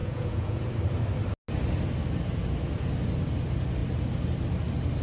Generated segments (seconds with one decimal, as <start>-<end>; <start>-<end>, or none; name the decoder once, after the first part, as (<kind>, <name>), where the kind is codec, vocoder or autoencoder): 0.0-0.7 (vocoder, Vocos)